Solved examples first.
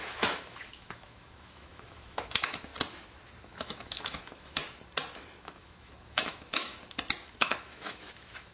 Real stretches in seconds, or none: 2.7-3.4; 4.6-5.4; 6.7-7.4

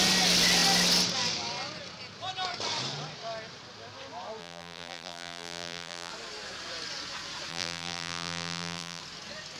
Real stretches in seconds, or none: 0.0-4.4; 6.1-7.5; 9.0-9.6

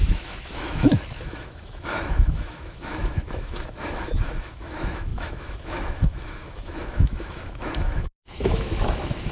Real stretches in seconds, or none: none

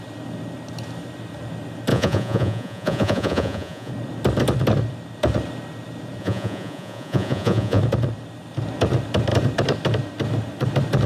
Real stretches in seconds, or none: 0.0-1.9; 3.9-6.2; 7.8-11.1

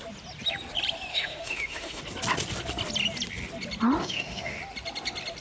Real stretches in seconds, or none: 0.0-1.1; 2.0-4.0; 4.6-5.4